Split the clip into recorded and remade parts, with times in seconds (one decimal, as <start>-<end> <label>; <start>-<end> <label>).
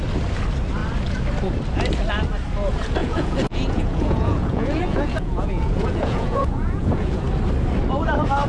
0.0-3.0 recorded; 3.0-7.2 remade; 7.2-8.5 recorded